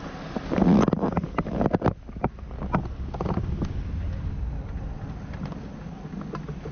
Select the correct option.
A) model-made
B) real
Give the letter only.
B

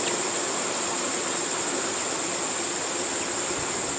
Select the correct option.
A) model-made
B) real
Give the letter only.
B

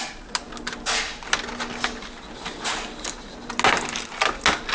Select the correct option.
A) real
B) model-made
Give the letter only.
A